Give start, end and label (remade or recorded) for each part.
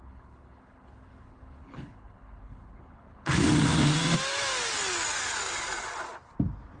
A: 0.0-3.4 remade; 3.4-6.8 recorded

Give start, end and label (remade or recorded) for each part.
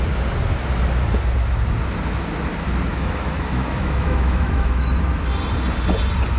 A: 0.0-2.9 recorded; 2.9-5.0 remade; 5.0-6.4 recorded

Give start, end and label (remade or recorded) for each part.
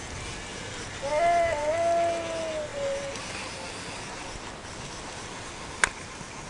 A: 0.0-6.5 recorded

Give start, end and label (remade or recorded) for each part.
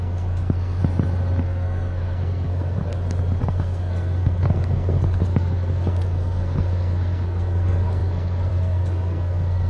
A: 0.0-0.8 remade; 0.8-1.4 recorded; 1.4-2.8 remade; 2.8-3.4 recorded; 3.4-9.7 remade